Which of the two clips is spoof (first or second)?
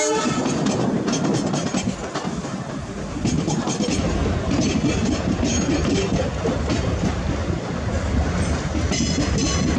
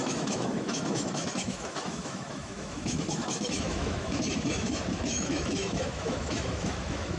second